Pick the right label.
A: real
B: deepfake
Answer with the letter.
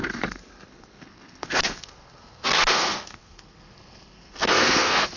B